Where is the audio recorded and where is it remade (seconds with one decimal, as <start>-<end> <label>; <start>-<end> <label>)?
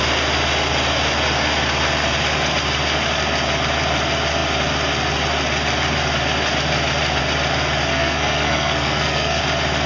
0.0-7.9 recorded; 7.9-9.4 remade; 9.4-9.9 recorded